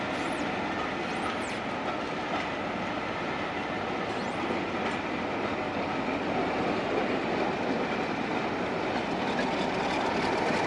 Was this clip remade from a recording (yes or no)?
no